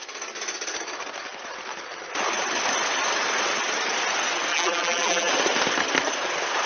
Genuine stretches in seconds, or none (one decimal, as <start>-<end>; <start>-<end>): 0.0-4.5; 5.3-6.7